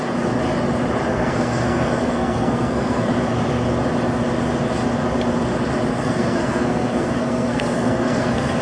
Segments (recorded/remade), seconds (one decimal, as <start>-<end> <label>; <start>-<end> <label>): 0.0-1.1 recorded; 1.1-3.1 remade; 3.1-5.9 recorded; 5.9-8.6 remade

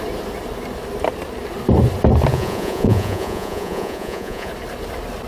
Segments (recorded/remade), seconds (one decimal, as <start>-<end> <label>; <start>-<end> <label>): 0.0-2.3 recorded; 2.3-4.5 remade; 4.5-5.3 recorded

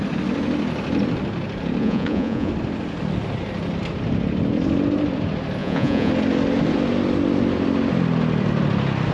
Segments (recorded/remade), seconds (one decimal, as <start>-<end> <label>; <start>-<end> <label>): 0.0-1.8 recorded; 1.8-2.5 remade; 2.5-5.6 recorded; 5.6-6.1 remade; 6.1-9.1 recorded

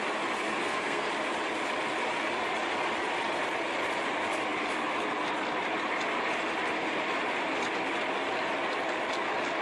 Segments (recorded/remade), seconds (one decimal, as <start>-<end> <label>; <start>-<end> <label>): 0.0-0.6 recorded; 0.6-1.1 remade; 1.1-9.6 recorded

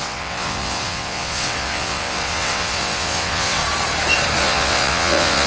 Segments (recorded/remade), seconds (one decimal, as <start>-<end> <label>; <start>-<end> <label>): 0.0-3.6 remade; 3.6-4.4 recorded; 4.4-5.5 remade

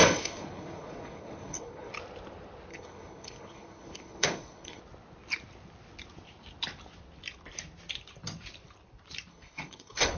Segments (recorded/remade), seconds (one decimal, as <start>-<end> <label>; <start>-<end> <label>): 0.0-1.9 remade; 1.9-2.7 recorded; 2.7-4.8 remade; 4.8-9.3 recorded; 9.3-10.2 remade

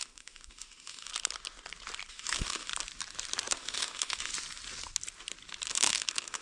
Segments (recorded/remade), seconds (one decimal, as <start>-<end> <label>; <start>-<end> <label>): 0.0-1.1 remade; 1.1-2.1 recorded; 2.1-2.7 remade; 2.7-3.5 recorded; 3.5-4.3 remade; 4.3-5.7 recorded; 5.7-6.4 remade